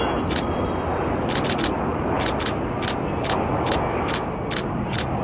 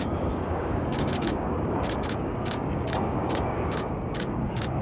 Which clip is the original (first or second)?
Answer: first